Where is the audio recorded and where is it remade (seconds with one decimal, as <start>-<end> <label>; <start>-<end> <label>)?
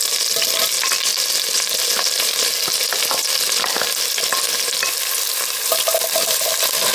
0.0-6.9 recorded